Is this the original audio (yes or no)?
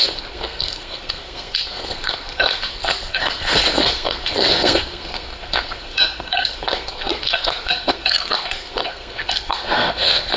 no